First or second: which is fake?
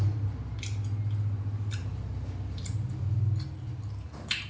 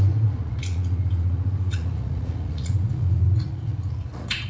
second